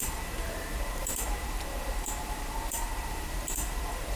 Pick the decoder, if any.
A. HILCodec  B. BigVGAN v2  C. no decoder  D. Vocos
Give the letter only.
B